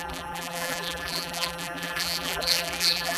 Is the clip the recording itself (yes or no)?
no